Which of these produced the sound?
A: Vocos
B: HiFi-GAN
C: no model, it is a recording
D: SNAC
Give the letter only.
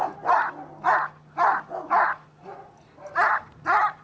C